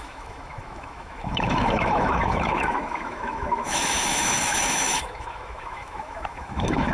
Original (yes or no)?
no